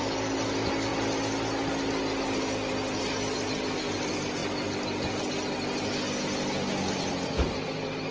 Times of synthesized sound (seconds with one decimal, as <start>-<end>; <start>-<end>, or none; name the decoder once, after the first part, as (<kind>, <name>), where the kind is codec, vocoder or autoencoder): none